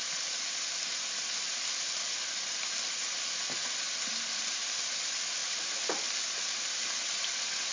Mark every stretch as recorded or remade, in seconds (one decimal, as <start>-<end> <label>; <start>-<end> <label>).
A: 0.0-5.4 recorded; 5.4-6.1 remade; 6.1-7.7 recorded